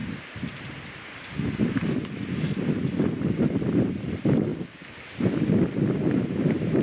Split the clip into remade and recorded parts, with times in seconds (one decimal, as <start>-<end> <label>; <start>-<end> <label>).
0.0-0.6 recorded; 0.6-4.5 remade; 4.5-6.2 recorded; 6.2-6.8 remade